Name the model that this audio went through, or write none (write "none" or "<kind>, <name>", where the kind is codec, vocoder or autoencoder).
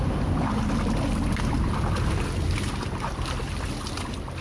vocoder, BigVGAN v2